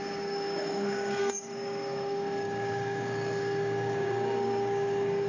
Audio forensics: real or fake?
fake